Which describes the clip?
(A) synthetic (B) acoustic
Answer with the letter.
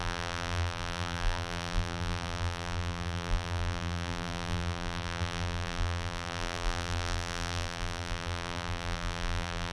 A